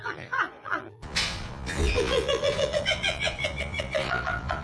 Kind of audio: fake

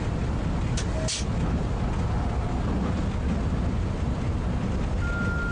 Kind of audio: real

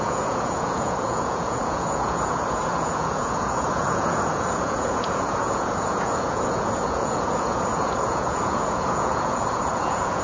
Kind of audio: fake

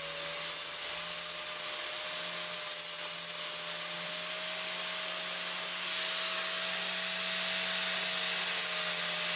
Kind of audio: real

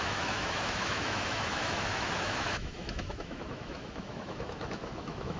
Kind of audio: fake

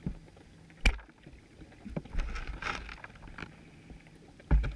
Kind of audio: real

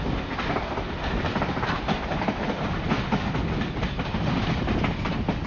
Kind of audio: real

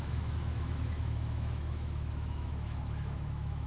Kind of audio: fake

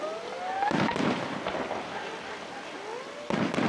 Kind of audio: real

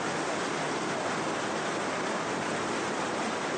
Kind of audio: real